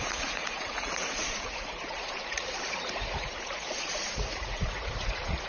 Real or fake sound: fake